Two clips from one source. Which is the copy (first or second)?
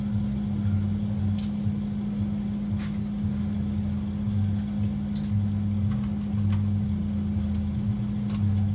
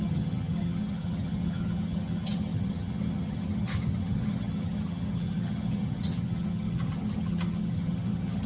second